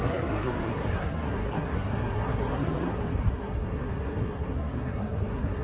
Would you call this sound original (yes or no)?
no